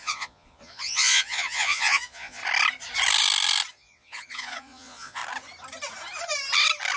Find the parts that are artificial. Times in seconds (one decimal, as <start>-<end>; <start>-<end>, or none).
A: 0.0-2.4; 3.7-5.2